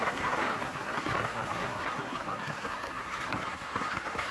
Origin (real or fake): fake